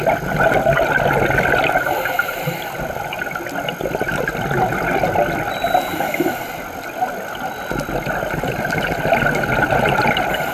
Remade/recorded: recorded